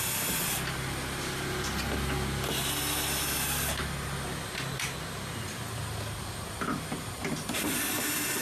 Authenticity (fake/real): real